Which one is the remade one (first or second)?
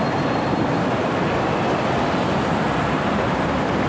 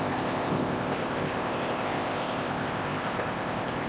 second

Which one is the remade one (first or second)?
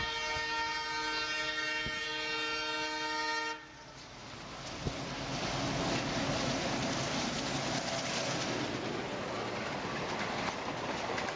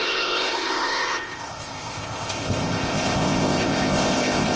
second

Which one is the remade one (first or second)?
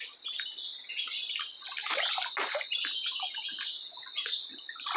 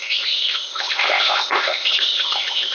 second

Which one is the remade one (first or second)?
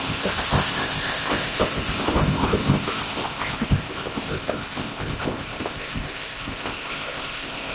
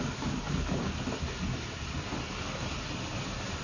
first